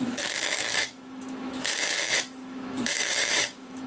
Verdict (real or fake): fake